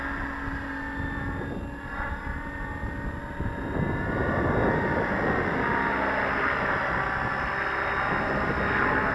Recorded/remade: recorded